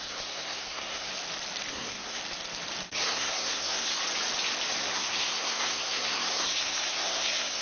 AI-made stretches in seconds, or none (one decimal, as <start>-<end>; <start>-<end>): 0.0-1.1; 1.7-2.2; 2.9-4.0; 4.8-7.6